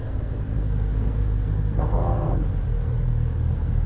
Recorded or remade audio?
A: remade